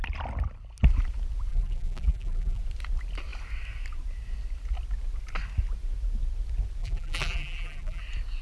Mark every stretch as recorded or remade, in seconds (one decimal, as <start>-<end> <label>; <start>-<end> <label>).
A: 0.0-1.5 recorded; 1.5-2.6 remade; 2.6-6.8 recorded; 6.8-8.0 remade; 8.0-8.4 recorded